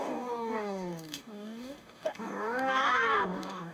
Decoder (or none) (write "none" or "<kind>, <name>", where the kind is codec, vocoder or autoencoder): codec, DAC